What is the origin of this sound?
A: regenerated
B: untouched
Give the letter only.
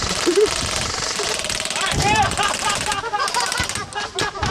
A